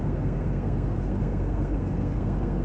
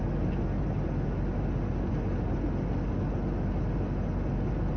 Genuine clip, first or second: second